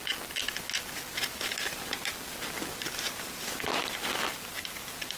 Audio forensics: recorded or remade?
recorded